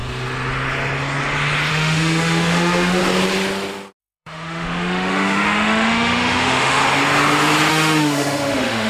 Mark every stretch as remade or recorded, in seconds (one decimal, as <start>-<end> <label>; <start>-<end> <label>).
0.0-1.7 recorded; 1.7-3.0 remade; 3.0-4.0 recorded; 4.0-6.8 remade; 6.8-7.7 recorded; 7.7-8.9 remade